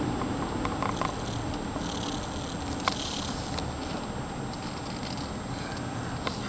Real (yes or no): yes